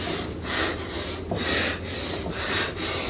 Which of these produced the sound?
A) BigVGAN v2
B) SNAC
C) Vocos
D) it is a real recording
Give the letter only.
D